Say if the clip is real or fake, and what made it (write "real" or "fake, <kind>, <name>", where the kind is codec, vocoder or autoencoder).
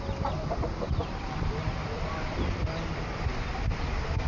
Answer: fake, vocoder, BigVGAN v2